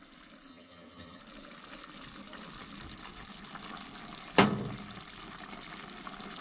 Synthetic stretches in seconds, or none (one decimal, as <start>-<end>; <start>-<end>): 0.5-1.2